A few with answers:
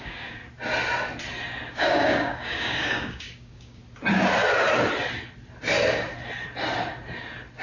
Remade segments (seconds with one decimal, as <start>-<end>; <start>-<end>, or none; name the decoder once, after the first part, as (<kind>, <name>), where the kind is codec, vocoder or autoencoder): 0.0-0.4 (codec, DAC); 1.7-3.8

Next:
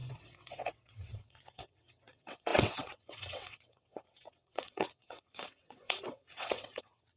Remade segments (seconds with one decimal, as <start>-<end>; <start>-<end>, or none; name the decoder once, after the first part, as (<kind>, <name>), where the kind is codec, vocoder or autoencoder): 0.0-7.2 (vocoder, WaveNeXt)

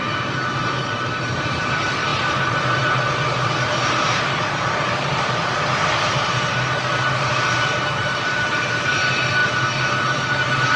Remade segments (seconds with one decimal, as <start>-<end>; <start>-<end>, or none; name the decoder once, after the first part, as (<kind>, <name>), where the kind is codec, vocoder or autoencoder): 0.0-10.8 (vocoder, BigVGAN v2)

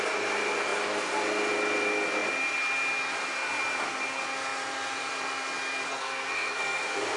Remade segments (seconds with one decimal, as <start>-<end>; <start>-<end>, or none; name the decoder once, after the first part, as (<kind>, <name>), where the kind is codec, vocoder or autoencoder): 5.9-6.8 (codec, SNAC)